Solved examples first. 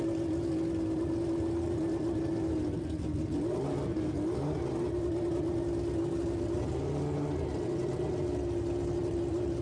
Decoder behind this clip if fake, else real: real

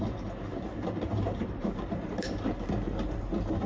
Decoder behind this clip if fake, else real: fake, vocoder, BigVGAN v2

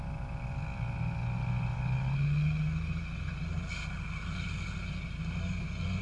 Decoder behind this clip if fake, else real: real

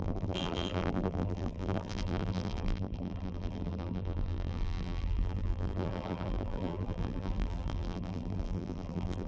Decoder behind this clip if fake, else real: fake, vocoder, BigVGAN v2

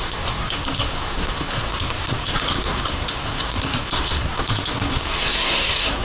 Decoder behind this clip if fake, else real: fake, codec, SNAC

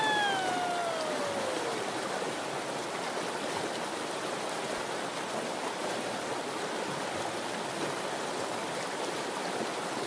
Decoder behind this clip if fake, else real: real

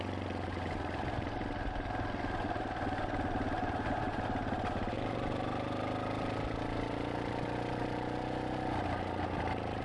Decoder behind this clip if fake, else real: real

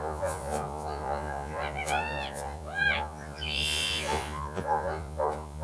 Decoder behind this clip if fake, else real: fake, vocoder, Vocos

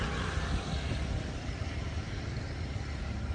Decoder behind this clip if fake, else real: real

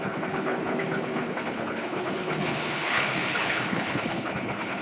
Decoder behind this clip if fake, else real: fake, codec, HILCodec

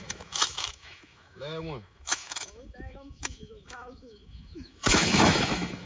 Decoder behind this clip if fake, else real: fake, autoencoder, DAC-VAE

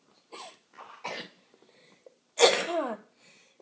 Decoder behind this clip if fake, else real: real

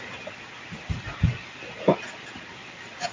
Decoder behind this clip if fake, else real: real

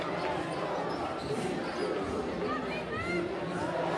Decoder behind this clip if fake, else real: real